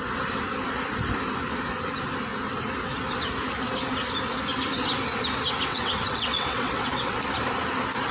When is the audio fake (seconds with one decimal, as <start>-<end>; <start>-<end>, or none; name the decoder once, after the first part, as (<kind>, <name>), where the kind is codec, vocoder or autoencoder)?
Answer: 5.7-7.2 (vocoder, WaveNeXt)